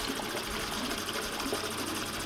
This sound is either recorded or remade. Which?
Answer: recorded